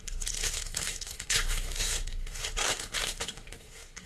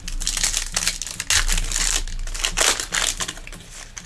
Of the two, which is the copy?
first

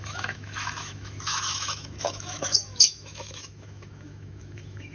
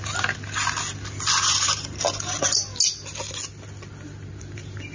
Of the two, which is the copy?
first